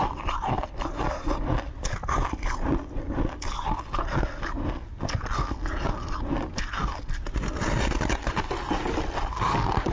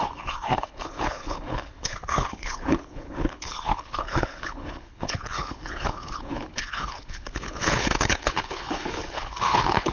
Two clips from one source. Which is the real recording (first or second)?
first